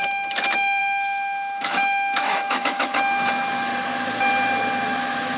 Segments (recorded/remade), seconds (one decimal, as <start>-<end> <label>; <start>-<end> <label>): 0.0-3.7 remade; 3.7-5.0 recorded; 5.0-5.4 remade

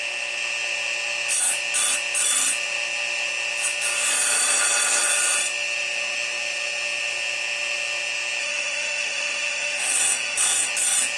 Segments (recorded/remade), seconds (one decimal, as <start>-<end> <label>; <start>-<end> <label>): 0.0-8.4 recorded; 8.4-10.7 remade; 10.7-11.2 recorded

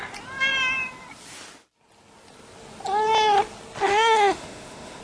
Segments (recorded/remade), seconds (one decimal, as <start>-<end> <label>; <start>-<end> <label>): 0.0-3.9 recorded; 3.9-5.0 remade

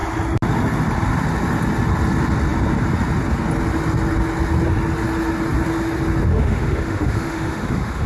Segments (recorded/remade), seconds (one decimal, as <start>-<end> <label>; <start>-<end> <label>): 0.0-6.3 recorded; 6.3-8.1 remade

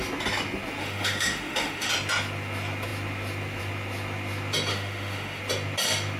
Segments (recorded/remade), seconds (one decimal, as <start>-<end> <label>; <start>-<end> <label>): 0.0-0.8 recorded; 0.8-1.9 remade; 1.9-4.7 recorded; 4.7-5.4 remade; 5.4-6.2 recorded